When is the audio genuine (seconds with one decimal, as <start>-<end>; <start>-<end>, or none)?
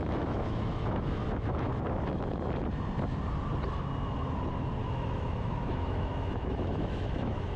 1.8-4.8